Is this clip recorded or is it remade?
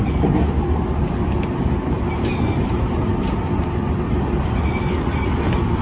recorded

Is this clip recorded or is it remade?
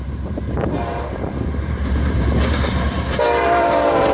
remade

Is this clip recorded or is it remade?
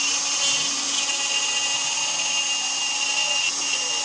recorded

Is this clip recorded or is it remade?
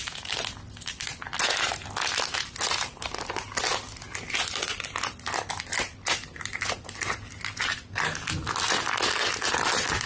recorded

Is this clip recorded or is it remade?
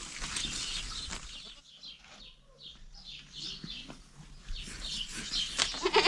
recorded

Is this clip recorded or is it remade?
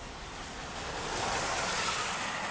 recorded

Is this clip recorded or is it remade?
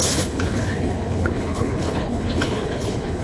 remade